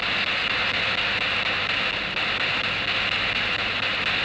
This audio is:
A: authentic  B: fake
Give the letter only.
A